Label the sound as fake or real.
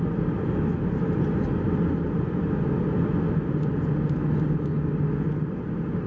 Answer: real